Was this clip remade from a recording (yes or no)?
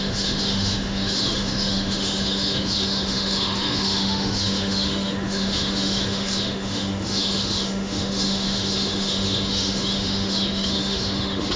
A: yes